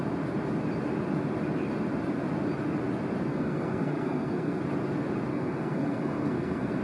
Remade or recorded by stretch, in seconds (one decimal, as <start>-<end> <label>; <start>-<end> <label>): 0.0-3.3 recorded; 3.3-4.6 remade; 4.6-5.3 recorded; 5.3-6.8 remade